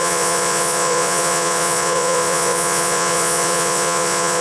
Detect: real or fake fake